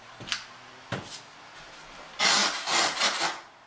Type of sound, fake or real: real